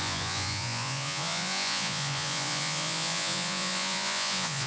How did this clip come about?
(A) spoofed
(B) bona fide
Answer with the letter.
A